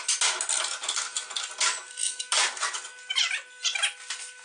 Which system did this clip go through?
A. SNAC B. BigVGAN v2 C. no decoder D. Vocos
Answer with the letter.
C